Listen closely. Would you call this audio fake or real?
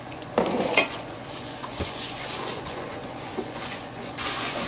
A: fake